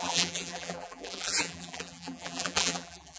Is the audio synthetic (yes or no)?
yes